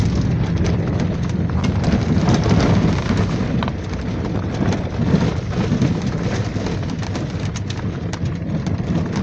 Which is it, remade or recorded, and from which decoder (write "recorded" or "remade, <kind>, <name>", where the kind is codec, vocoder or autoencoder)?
recorded